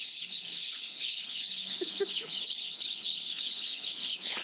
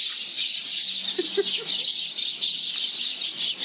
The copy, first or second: first